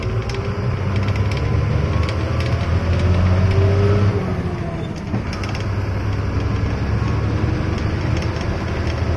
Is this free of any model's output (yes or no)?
yes